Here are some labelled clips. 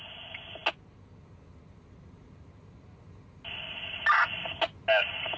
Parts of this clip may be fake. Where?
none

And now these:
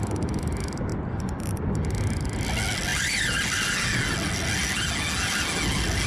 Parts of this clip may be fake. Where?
none

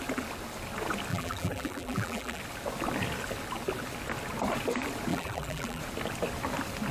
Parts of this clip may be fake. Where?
1.1-2.4; 5.1-5.8

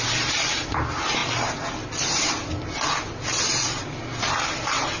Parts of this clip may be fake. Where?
none

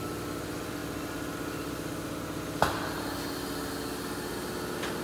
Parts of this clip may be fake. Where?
none

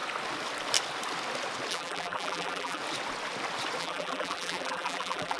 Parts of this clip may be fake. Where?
1.7-2.8; 3.8-5.4

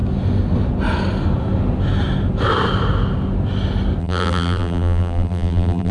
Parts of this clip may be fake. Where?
4.0-5.9

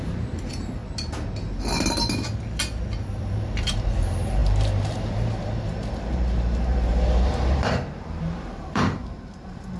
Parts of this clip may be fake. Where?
0.0-0.8; 3.0-9.8